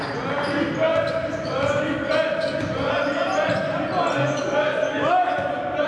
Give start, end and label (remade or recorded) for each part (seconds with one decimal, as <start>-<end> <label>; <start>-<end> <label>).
0.0-5.0 recorded; 5.0-5.5 remade; 5.5-5.9 recorded